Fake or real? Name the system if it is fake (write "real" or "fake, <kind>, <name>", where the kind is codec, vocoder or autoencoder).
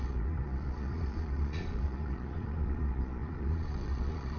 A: fake, vocoder, Vocos